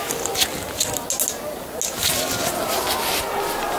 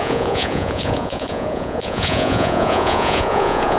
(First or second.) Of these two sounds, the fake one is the second